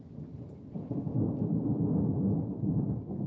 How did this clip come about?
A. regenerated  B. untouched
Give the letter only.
B